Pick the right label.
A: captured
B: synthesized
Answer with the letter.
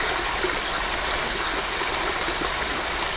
A